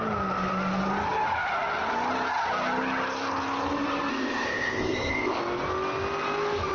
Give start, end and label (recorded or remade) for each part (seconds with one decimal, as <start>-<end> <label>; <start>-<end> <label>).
0.0-4.1 recorded; 4.1-5.4 remade; 5.4-6.7 recorded